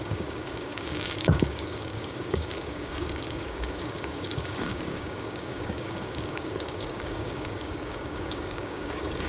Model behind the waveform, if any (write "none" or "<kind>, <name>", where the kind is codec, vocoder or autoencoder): codec, DAC